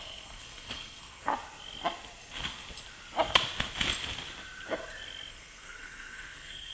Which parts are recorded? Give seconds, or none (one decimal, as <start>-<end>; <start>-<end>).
1.3-5.3